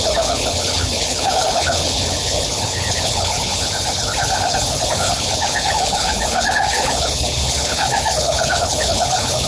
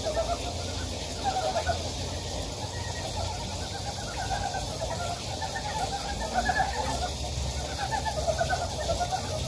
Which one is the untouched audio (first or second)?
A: second